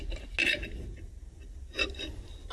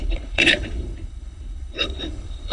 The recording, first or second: first